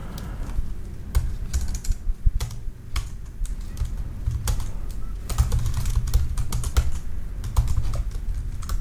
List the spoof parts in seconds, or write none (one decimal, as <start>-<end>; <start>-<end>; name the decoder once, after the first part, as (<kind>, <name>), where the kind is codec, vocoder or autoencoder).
0.0-0.6 (vocoder, BigVGAN v2); 1.8-3.5; 5.2-5.9